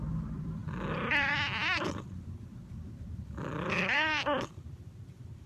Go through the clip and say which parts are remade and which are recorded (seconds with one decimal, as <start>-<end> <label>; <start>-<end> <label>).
0.0-5.5 remade